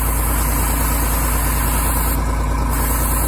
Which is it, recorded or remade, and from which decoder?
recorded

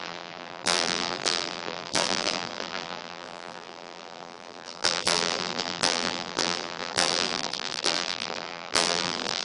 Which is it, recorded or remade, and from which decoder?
remade, vocoder, BigVGAN v2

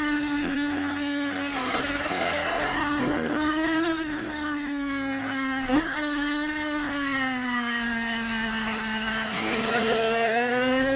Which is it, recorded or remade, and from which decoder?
remade, codec, SNAC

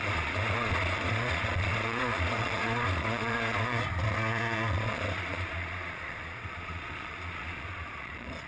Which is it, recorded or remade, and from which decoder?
remade, vocoder, Vocos